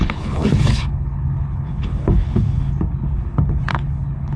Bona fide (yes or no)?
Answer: no